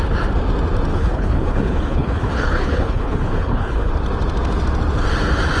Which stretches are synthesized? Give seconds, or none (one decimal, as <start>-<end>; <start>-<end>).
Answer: 0.9-3.9